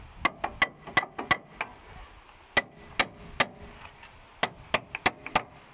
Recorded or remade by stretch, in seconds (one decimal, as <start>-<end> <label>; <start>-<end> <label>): 0.0-5.7 recorded